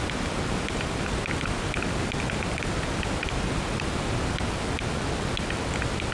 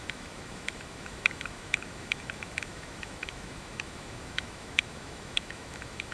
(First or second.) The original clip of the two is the first